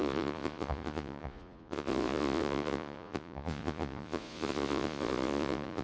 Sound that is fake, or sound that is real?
fake